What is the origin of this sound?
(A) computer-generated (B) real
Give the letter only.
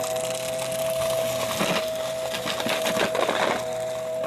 B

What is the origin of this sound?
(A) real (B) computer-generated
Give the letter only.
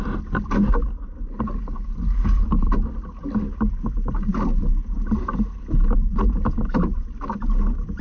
A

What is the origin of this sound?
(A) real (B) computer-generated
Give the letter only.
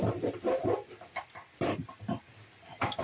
B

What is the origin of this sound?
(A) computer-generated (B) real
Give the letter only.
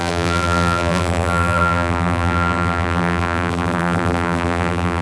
A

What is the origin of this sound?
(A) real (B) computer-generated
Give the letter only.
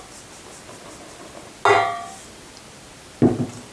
A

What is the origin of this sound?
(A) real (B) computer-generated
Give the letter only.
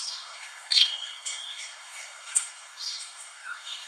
B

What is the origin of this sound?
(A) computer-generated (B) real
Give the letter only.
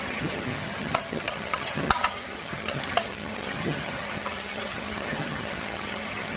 A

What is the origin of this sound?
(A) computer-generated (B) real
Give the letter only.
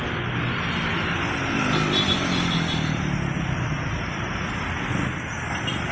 B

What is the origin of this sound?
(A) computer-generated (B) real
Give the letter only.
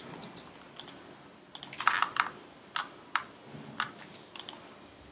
B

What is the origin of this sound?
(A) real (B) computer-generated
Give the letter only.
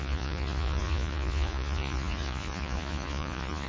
B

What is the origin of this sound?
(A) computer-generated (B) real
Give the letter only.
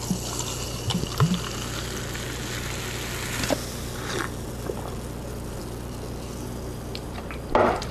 B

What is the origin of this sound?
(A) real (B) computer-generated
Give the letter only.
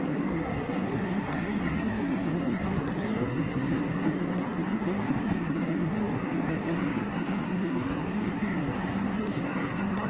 B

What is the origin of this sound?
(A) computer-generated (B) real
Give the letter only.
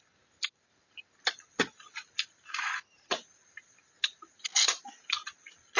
B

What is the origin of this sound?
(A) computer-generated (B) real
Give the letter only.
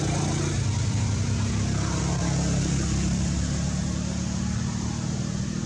B